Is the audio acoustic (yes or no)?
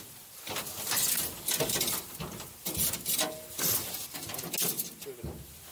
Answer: yes